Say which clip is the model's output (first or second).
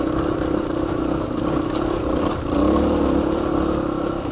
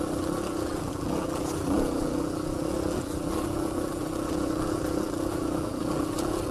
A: second